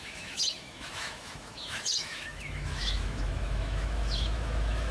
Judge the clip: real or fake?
fake